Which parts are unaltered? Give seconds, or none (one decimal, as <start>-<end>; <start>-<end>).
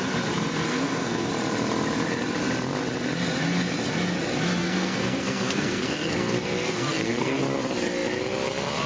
0.0-0.7; 1.3-4.6; 7.4-8.9